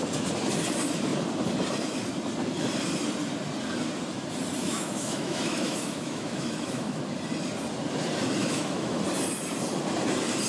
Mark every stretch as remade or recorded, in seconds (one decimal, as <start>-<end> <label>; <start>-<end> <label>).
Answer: 0.0-4.6 recorded; 4.6-7.0 remade; 7.0-8.4 recorded; 8.4-9.0 remade; 9.0-10.5 recorded